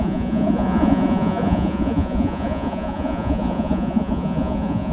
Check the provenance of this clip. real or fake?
fake